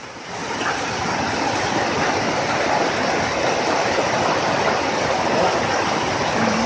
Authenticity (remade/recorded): recorded